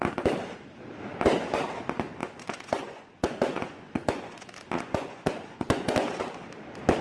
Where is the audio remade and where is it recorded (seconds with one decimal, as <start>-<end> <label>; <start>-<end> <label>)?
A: 0.0-2.2 recorded; 2.2-6.2 remade; 6.2-7.0 recorded